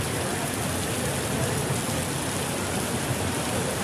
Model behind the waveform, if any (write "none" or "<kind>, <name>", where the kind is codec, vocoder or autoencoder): none